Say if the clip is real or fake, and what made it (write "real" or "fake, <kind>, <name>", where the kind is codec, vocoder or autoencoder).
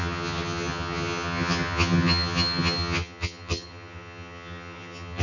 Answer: fake, vocoder, HiFi-GAN